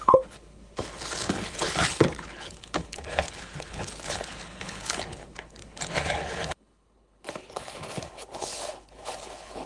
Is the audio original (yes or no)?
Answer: no